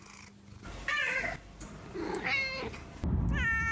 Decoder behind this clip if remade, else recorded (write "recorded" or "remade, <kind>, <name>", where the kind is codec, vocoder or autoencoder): recorded